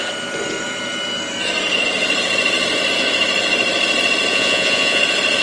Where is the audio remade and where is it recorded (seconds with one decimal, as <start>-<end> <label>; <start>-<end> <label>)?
0.0-4.3 recorded; 4.3-5.0 remade; 5.0-5.4 recorded